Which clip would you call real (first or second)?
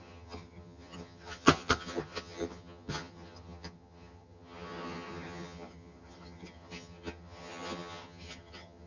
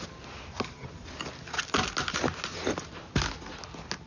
second